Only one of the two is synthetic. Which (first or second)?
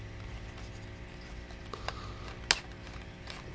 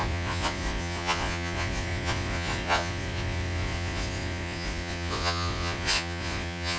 second